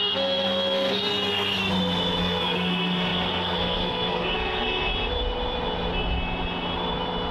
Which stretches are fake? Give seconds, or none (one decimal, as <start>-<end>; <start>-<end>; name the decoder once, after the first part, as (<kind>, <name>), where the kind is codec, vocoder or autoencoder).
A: 0.0-1.6 (codec, SNAC); 2.2-4.9